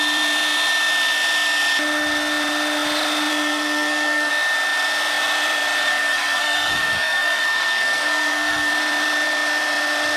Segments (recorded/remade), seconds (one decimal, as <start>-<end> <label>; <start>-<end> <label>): 0.0-3.3 recorded; 3.3-4.3 remade; 4.3-5.8 recorded; 5.8-8.7 remade; 8.7-10.2 recorded